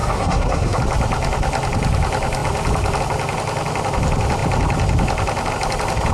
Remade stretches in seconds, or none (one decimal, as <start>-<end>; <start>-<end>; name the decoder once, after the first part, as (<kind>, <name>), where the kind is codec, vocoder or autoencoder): 0.0-0.8 (codec, SNAC)